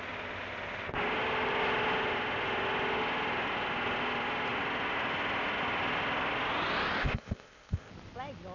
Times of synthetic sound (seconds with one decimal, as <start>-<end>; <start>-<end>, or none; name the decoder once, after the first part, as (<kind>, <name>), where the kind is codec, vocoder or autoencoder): 7.0-7.9 (codec, ZipCodec)